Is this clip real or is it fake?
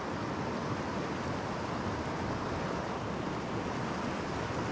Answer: real